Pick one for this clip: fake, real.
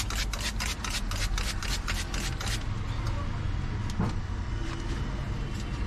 real